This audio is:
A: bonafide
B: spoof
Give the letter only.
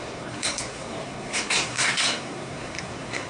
B